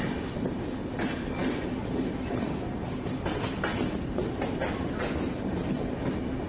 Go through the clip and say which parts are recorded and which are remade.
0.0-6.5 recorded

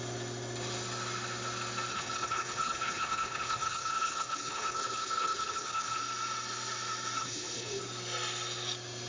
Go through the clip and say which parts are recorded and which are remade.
0.0-1.9 recorded; 1.9-6.0 remade; 6.0-7.2 recorded; 7.2-7.8 remade; 7.8-9.1 recorded

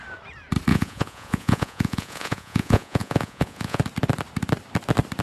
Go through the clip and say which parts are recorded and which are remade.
0.0-0.7 recorded; 0.7-3.8 remade; 3.8-5.2 recorded

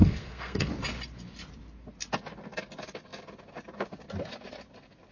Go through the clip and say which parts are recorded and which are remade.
0.0-0.7 remade; 0.7-5.1 recorded

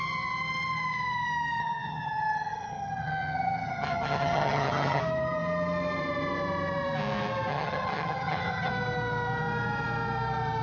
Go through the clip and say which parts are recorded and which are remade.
0.0-1.6 recorded; 1.6-5.0 remade; 5.0-7.5 recorded; 7.5-8.7 remade; 8.7-10.6 recorded

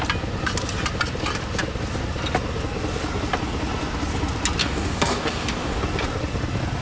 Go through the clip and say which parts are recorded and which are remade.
0.0-4.6 recorded; 4.6-5.8 remade; 5.8-6.8 recorded